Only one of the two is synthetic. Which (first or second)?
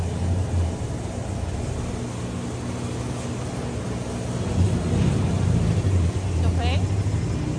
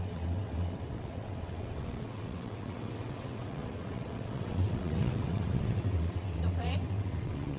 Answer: second